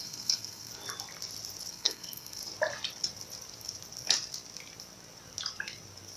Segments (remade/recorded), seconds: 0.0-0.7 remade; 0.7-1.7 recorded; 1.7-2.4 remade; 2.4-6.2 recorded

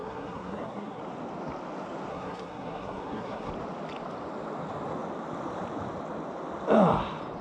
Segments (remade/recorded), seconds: 0.0-1.0 remade; 1.0-2.1 recorded; 2.1-3.5 remade; 3.5-7.4 recorded

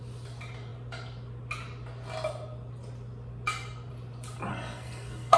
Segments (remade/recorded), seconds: 0.0-4.5 recorded; 4.5-5.4 remade

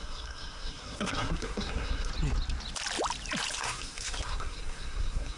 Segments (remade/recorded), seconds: 0.0-2.1 remade; 2.1-3.5 recorded; 3.5-5.4 remade